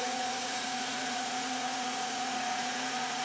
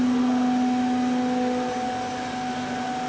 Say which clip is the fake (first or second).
first